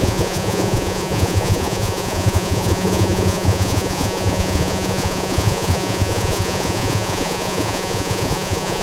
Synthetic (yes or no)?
yes